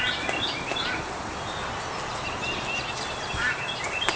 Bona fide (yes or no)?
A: yes